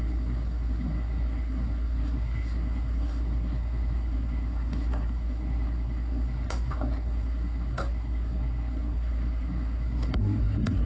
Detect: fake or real fake